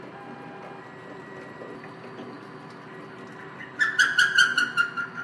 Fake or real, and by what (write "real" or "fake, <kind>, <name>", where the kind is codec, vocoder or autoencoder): real